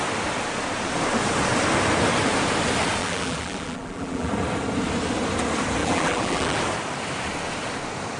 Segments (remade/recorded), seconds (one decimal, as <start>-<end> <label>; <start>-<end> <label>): 0.0-3.0 recorded; 3.0-4.3 remade; 4.3-5.8 recorded; 5.8-6.6 remade; 6.6-8.2 recorded